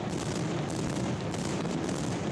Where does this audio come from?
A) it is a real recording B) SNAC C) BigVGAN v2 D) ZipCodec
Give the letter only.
A